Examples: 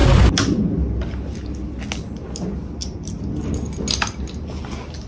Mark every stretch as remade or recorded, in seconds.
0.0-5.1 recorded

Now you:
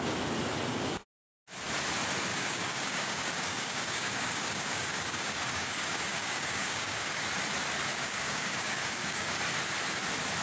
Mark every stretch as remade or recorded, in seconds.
0.0-0.7 recorded; 0.7-1.3 remade; 1.3-2.3 recorded; 2.3-7.2 remade; 7.2-7.9 recorded; 7.9-9.4 remade; 9.4-10.4 recorded

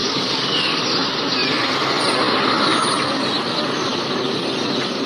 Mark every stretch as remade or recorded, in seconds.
0.0-0.8 remade; 0.8-5.1 recorded